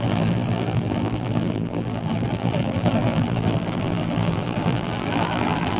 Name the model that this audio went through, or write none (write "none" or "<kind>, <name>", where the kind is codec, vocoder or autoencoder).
vocoder, BigVGAN v2